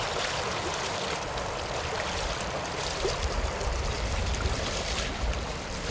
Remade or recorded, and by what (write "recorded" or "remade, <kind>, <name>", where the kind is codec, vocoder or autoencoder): remade, vocoder, BigVGAN v2